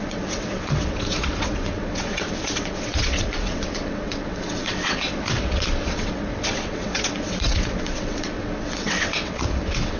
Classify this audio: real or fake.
fake